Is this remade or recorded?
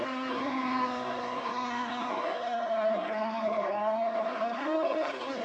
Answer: remade